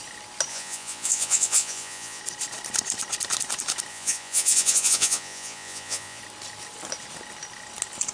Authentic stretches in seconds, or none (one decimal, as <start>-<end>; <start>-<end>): 0.0-0.5; 2.2-3.9; 6.2-8.1